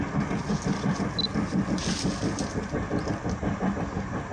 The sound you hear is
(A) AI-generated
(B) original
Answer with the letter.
A